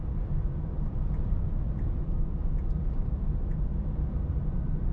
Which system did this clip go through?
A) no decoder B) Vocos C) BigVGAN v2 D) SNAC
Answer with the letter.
C